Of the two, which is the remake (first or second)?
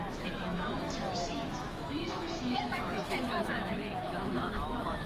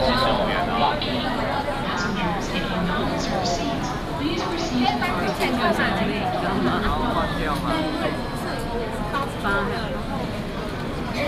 first